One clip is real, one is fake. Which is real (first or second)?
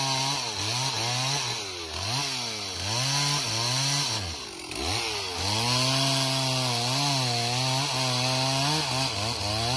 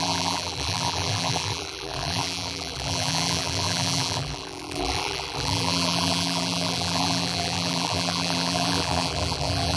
first